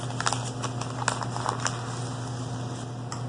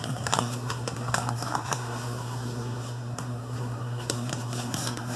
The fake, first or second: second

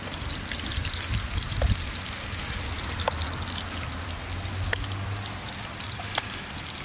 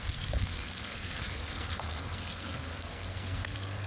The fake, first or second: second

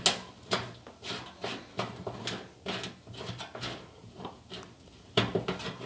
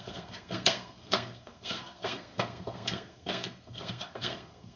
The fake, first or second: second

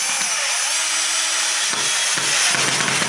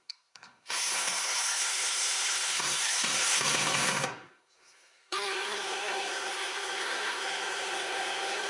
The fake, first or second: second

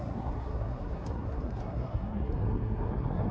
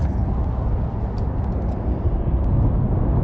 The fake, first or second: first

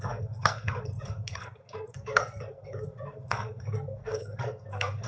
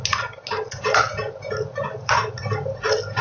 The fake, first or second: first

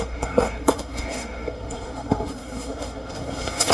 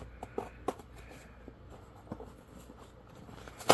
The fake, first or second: first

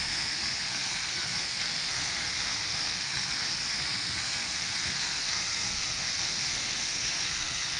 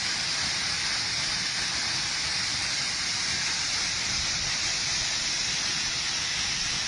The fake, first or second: first